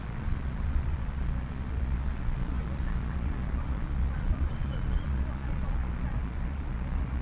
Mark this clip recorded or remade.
remade